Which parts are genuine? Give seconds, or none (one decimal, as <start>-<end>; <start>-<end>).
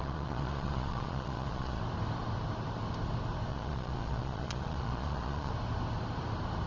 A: 1.8-3.5; 5.5-6.7